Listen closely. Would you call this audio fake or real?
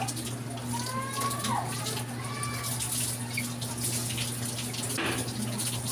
real